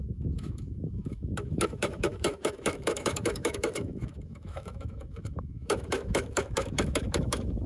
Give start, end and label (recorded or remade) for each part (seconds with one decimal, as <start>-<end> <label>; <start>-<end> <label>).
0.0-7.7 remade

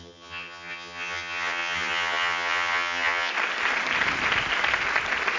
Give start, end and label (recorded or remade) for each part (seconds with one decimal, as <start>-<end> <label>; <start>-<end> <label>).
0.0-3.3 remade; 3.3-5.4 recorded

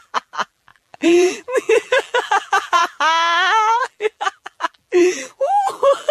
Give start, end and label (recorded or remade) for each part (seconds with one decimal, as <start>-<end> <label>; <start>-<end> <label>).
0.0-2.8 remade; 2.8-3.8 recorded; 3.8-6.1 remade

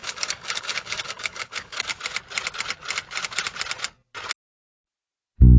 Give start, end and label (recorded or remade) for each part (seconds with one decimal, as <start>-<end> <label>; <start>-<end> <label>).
0.0-1.9 remade; 1.9-5.6 recorded

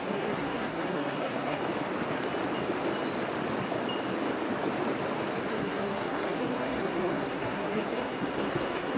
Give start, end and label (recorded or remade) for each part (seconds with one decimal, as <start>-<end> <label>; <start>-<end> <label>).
0.0-1.6 remade; 1.6-5.5 recorded; 5.5-9.0 remade